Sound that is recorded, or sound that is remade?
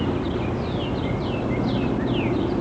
recorded